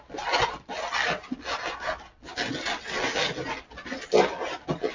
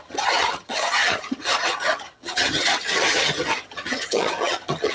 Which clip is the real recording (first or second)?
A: first